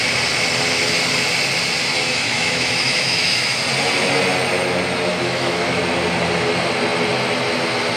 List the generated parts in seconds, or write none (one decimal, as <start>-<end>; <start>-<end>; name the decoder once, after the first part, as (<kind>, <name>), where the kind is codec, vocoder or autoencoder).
1.9-3.6 (autoencoder, DAC-VAE); 5.1-5.8

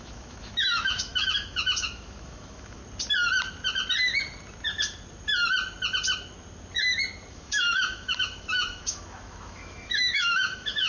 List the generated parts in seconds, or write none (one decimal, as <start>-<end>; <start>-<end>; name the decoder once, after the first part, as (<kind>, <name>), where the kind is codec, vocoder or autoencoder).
0.0-2.8 (autoencoder, DAC-VAE); 7.3-10.9

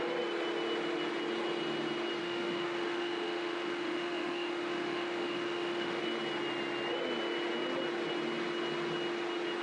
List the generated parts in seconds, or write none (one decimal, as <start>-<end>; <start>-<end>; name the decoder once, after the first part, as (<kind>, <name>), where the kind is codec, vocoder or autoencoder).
2.2-6.0 (autoencoder, DAC-VAE)

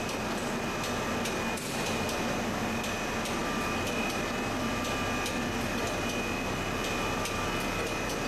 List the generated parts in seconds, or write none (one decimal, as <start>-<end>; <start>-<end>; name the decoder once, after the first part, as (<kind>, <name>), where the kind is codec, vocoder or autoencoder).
none

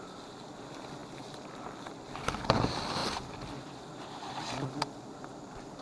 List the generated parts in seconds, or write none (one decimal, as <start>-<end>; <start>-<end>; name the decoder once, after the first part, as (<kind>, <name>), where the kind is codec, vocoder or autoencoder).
none

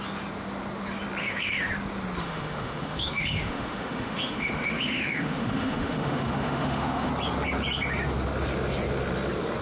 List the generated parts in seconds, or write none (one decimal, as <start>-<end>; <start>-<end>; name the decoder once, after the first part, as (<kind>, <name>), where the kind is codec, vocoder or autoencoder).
1.2-1.7 (autoencoder, DAC-VAE); 2.2-7.1